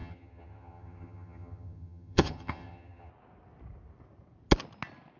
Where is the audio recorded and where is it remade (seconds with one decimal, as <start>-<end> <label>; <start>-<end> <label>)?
0.0-3.1 remade; 3.1-5.2 recorded